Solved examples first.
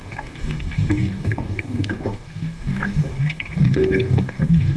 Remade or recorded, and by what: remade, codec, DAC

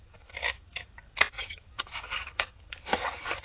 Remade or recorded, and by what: remade, codec, DAC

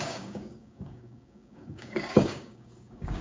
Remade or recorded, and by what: remade, codec, DAC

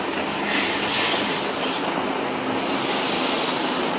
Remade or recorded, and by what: recorded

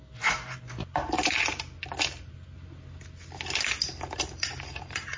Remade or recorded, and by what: recorded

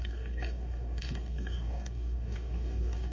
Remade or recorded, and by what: remade, codec, DAC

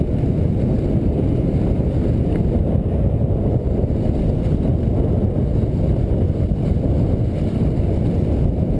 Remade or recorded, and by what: recorded